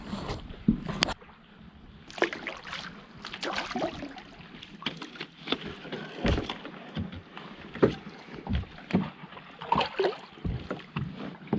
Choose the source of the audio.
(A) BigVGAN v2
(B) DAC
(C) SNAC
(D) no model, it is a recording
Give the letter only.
D